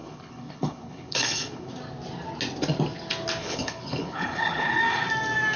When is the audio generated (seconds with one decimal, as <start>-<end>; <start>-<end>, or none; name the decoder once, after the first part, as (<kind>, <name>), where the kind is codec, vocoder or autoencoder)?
0.0-1.7 (codec, HILCodec); 3.4-4.8